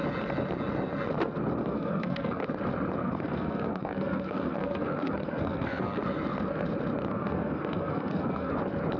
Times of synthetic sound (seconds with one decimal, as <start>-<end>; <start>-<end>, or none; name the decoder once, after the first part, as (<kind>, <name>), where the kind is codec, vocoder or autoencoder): 1.6-2.4 (codec, SNAC); 3.0-6.0; 7.1-8.5